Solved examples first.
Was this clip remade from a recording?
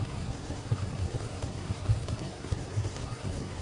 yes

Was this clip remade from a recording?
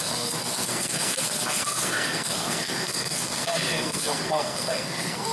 yes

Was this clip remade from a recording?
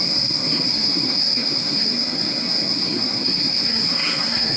yes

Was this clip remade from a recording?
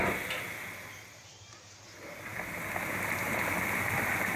no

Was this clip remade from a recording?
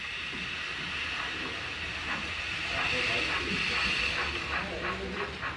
no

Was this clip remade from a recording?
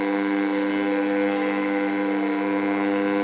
yes